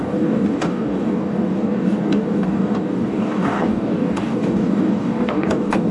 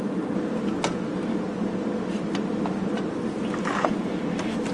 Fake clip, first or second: first